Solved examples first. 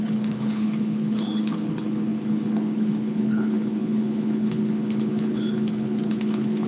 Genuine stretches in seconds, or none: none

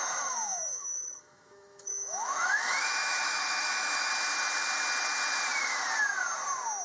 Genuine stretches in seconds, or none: 4.1-6.8

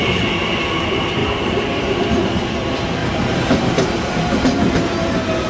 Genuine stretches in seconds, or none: 0.0-1.2; 2.0-3.0; 4.0-5.5

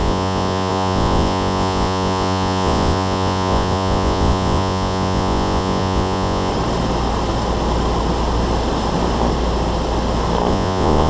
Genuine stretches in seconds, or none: 6.5-10.5